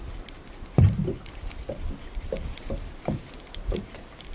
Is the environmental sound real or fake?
real